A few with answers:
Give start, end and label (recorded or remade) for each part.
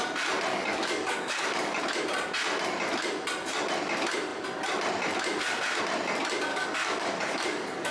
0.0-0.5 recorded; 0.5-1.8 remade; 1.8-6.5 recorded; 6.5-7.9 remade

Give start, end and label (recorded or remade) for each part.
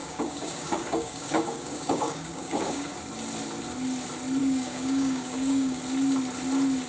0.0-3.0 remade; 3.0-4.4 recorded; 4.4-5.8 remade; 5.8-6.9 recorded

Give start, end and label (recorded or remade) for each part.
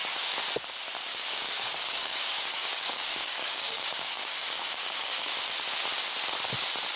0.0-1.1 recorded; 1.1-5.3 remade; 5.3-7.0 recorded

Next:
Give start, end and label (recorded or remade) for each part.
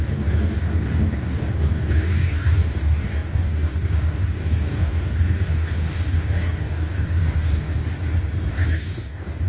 0.0-7.8 remade; 7.8-8.5 recorded; 8.5-9.5 remade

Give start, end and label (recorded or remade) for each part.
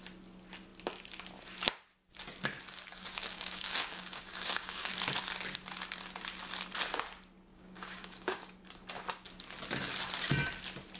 0.0-2.9 recorded; 2.9-4.9 remade; 4.9-7.5 recorded; 7.5-8.6 remade; 8.6-11.0 recorded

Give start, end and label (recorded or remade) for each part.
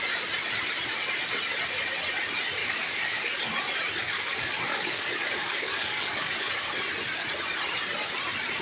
0.0-2.6 recorded; 2.6-3.4 remade; 3.4-4.0 recorded; 4.0-6.5 remade; 6.5-8.6 recorded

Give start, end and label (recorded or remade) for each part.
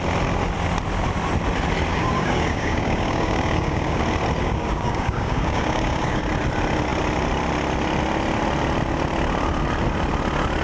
0.0-1.9 recorded; 1.9-4.0 remade; 4.0-4.4 recorded; 4.4-6.2 remade; 6.2-10.6 recorded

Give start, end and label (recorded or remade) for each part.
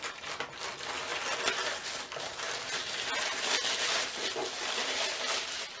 0.0-5.8 recorded